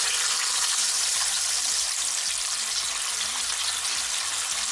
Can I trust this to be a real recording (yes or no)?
yes